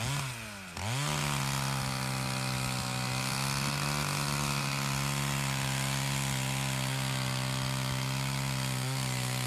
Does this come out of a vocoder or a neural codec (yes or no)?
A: no